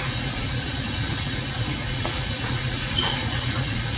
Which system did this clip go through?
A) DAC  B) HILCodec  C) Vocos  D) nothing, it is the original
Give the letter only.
C